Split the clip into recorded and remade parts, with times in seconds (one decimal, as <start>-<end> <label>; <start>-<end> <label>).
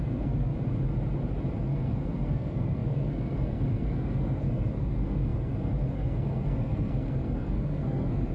0.0-0.5 remade; 0.5-1.6 recorded; 1.6-8.3 remade